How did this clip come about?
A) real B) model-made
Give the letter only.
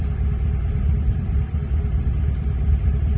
A